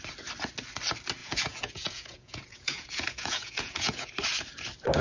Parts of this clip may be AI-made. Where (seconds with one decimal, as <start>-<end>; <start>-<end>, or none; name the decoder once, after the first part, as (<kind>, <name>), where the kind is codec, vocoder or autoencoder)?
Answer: 1.2-4.1 (vocoder, Vocos)